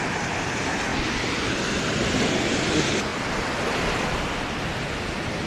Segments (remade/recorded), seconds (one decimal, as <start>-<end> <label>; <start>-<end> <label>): 0.0-5.5 recorded